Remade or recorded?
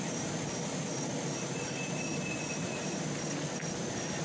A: recorded